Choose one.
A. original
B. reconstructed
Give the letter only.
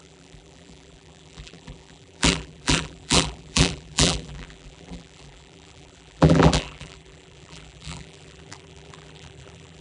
B